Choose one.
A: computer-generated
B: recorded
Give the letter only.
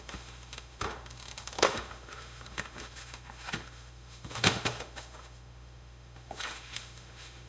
A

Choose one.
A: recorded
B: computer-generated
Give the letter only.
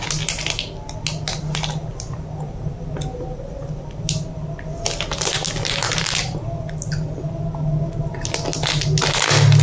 A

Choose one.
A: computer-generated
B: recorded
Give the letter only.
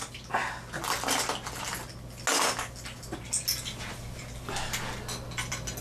B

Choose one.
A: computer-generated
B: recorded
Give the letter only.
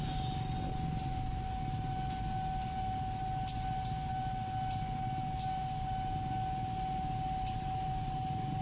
B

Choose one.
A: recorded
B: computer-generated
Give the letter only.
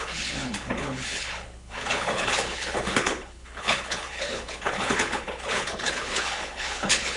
B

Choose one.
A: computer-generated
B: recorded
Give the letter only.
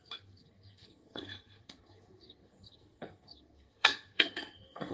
A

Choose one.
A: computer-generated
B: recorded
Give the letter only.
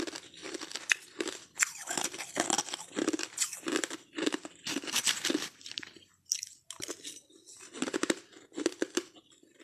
B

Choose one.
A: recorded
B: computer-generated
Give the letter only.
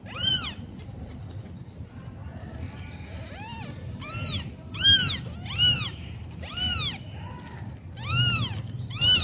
A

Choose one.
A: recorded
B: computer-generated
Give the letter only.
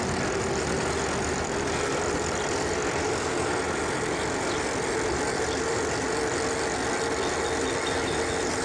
A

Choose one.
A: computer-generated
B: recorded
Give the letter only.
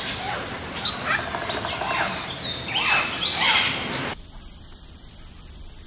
B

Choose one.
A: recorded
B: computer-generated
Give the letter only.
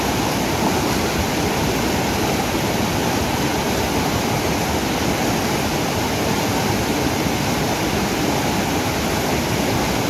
A